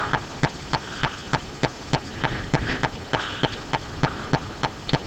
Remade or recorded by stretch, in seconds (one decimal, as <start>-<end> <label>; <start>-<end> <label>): 0.0-5.1 recorded